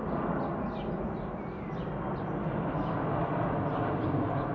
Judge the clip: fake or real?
real